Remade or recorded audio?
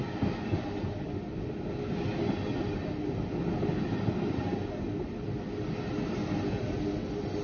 recorded